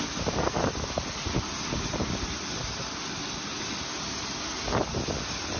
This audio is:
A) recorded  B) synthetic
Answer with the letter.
A